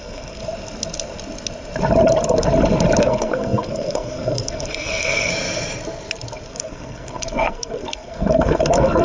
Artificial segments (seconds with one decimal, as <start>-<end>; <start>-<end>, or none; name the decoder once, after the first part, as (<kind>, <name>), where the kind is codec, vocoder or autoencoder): 0.0-0.4 (codec, SNAC); 3.0-5.3; 6.5-9.0